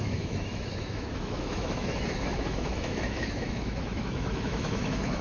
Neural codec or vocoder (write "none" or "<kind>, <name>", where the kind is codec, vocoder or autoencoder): autoencoder, DAC-VAE